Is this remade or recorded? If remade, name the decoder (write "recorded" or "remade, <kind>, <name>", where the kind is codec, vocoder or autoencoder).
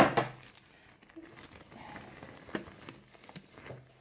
recorded